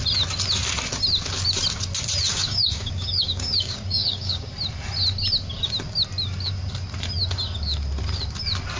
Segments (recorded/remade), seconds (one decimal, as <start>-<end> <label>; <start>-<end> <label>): 0.0-2.3 recorded; 2.3-4.5 remade; 4.5-8.8 recorded

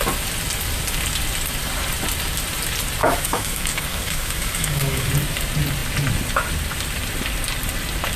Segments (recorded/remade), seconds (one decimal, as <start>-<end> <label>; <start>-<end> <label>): 0.0-3.0 recorded; 3.0-5.1 remade; 5.1-8.2 recorded

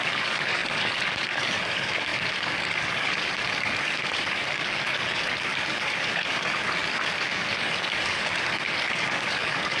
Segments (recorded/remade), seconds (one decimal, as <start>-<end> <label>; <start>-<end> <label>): 0.0-9.8 remade